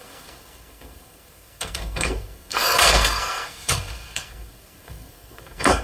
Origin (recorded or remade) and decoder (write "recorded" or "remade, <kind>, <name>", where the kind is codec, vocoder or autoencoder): remade, codec, SNAC